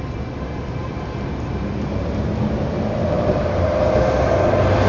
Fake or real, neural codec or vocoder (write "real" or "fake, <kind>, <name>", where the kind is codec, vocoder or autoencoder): real